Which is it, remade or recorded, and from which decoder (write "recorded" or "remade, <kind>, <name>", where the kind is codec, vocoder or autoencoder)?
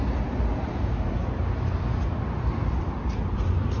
recorded